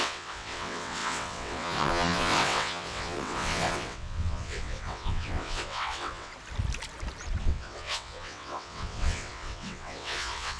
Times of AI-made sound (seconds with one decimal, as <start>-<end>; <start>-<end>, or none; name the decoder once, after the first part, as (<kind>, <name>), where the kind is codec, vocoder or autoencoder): 0.0-6.3 (vocoder, WaveNeXt); 7.4-10.6